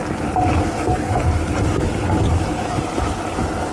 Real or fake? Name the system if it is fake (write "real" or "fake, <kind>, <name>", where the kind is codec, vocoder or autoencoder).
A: real